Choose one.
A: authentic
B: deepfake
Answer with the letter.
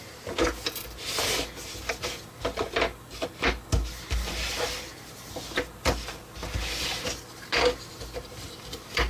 A